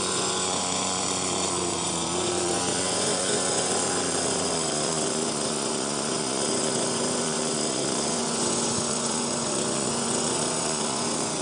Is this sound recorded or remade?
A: remade